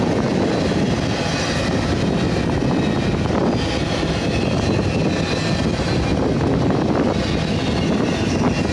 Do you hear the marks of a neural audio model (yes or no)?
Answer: no